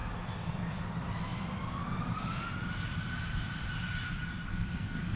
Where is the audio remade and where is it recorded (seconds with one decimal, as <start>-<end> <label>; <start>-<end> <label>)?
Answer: 0.0-4.5 recorded; 4.5-5.2 remade